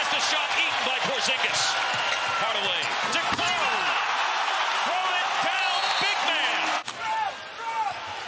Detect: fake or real real